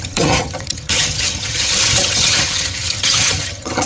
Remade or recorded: remade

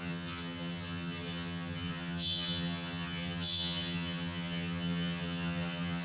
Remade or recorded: remade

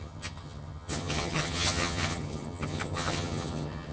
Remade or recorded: remade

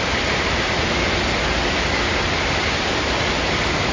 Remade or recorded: recorded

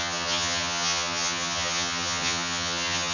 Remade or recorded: remade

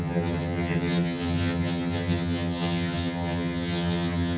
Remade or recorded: remade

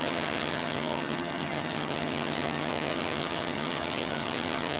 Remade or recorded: remade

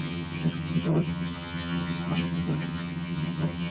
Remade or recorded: remade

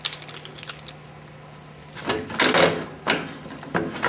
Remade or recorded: recorded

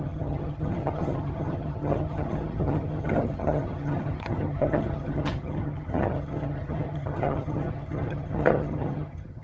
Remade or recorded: remade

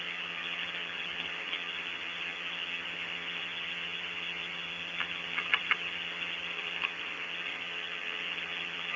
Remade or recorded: remade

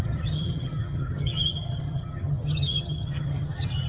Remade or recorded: remade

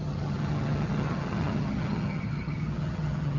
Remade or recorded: remade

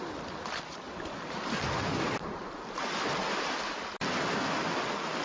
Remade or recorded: recorded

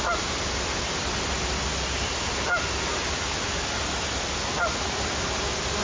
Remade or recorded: recorded